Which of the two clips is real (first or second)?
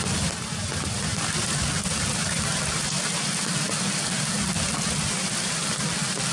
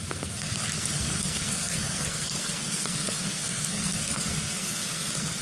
first